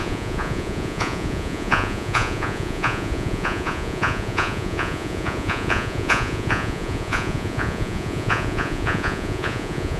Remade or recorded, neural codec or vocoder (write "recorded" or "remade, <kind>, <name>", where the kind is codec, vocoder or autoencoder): remade, vocoder, Vocos